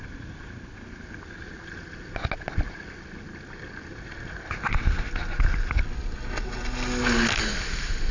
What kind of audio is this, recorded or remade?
recorded